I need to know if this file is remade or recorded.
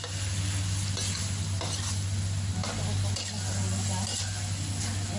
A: recorded